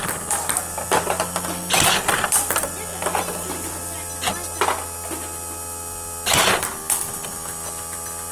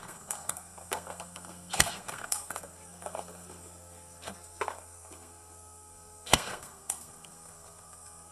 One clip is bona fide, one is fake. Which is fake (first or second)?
second